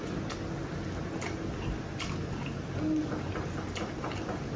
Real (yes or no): yes